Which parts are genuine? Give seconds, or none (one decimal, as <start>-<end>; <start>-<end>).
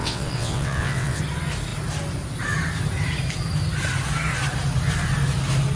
1.2-5.8